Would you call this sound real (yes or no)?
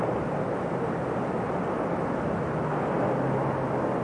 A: yes